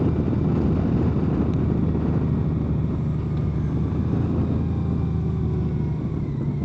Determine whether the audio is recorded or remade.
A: recorded